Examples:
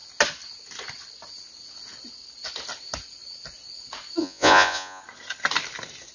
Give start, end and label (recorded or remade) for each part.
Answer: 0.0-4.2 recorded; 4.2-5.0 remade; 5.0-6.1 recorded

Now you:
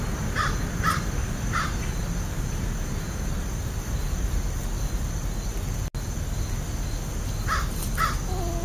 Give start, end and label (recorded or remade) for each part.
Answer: 0.0-1.2 recorded; 1.2-4.6 remade; 4.6-8.6 recorded